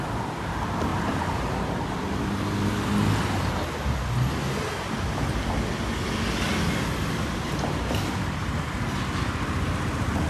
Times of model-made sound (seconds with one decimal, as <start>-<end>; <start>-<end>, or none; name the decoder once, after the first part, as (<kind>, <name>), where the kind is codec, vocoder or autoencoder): 0.9-1.4 (vocoder, BigVGAN v2)